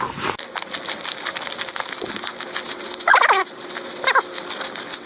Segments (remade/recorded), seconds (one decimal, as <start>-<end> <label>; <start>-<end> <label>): 0.0-5.1 recorded